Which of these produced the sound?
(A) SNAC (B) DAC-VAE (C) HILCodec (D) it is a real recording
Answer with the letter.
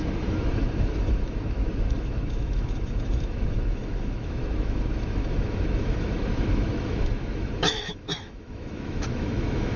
B